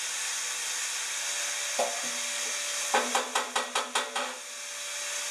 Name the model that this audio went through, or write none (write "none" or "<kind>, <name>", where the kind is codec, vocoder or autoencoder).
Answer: none